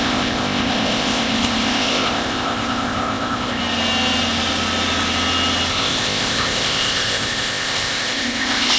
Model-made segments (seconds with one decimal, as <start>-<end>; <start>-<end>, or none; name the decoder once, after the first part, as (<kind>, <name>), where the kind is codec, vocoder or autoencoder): 0.0-3.6 (codec, ZipCodec); 5.7-8.8